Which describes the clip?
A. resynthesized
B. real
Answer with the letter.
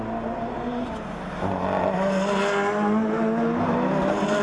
B